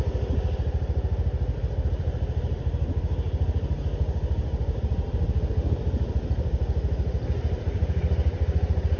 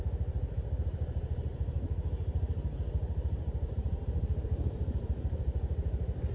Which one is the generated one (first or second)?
second